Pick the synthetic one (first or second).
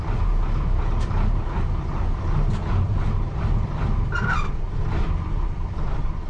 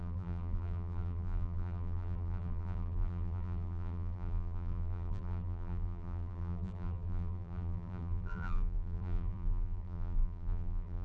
second